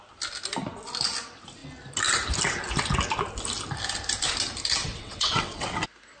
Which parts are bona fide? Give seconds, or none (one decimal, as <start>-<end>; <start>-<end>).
0.0-4.8; 5.7-6.2